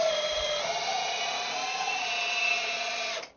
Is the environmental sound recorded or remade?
remade